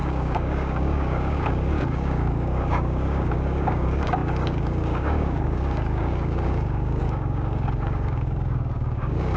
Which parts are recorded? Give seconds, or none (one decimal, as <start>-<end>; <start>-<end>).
none